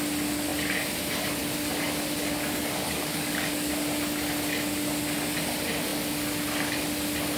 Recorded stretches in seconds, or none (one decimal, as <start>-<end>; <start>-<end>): 0.0-2.2; 3.7-7.4